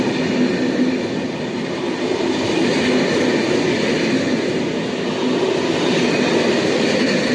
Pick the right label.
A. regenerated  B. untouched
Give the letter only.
B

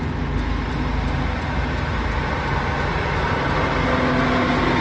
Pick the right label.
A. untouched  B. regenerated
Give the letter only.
A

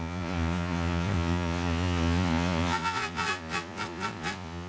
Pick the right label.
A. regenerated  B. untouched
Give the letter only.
A